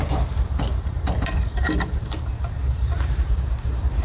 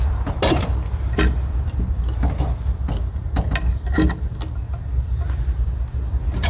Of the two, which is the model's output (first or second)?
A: first